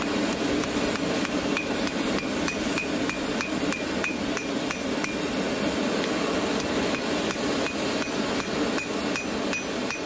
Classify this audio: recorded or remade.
recorded